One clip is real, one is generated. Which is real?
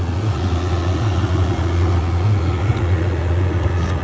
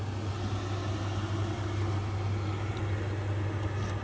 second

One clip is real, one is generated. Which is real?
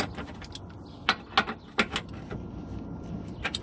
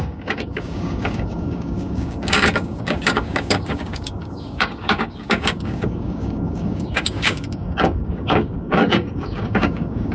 first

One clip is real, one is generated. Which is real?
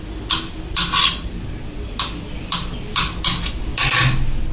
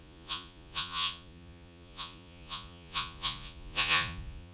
first